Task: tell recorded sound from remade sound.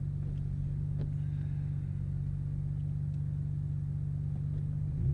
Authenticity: recorded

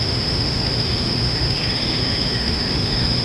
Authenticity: remade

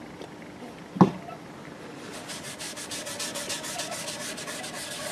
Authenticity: remade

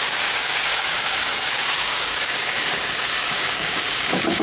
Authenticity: remade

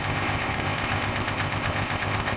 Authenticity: remade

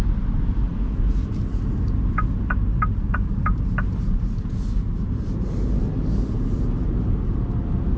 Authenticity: recorded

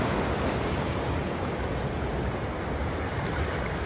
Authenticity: recorded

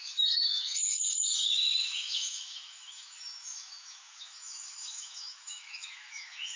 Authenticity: remade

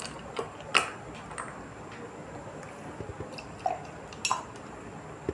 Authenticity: recorded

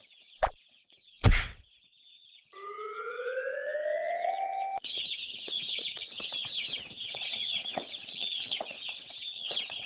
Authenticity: remade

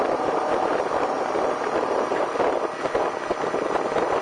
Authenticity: recorded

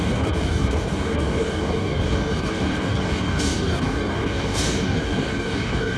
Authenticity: remade